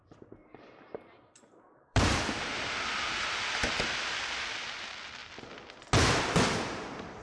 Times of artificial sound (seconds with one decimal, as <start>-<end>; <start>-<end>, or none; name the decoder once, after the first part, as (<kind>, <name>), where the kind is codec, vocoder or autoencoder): 0.0-3.6 (vocoder, BigVGAN v2)